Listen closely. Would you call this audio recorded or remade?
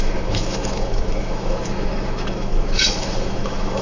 remade